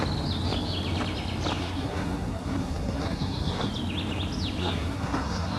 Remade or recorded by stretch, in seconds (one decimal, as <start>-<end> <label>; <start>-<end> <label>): 0.0-1.6 recorded; 1.6-3.7 remade; 3.7-4.6 recorded; 4.6-5.6 remade

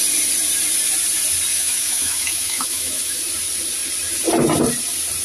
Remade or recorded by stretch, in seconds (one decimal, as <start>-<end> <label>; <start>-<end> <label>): 0.0-1.5 recorded; 1.5-3.2 remade; 3.2-5.2 recorded

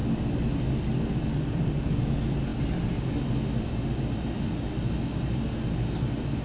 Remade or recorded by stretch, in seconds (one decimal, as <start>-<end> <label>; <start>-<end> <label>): 0.0-6.4 recorded

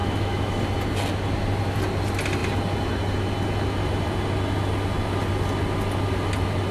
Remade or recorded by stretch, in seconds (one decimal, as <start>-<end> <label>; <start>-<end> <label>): 0.0-0.6 remade; 0.6-6.7 recorded

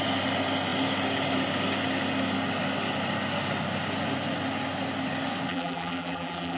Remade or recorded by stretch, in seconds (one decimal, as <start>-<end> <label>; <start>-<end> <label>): 0.0-5.5 recorded; 5.5-6.6 remade

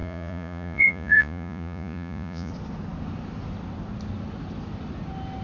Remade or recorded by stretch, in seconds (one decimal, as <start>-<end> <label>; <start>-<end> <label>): 0.0-2.5 remade; 2.5-5.4 recorded

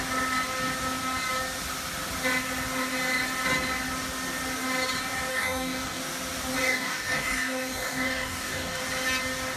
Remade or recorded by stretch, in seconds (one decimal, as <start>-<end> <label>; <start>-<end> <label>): 0.0-5.3 recorded; 5.3-6.0 remade; 6.0-6.6 recorded; 6.6-8.8 remade; 8.8-9.6 recorded